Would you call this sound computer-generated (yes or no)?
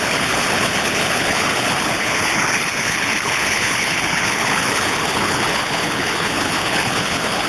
yes